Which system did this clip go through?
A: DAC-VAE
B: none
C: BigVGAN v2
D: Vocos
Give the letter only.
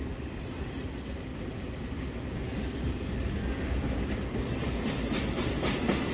B